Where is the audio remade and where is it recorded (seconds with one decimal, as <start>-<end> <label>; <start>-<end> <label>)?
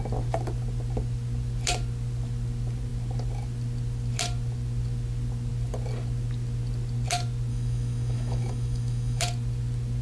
0.0-7.5 recorded; 7.5-9.2 remade; 9.2-10.0 recorded